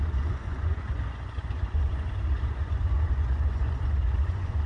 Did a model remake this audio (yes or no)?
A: yes